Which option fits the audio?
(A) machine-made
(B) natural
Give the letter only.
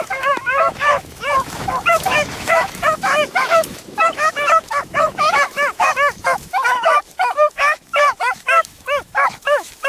A